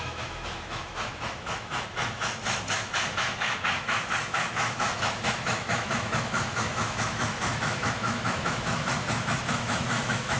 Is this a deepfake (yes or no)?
yes